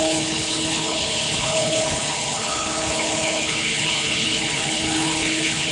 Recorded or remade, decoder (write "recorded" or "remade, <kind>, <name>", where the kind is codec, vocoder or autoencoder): remade, codec, HILCodec